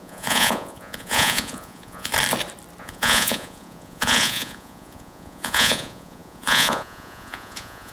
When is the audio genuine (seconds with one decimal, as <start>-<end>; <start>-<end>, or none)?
2.1-2.8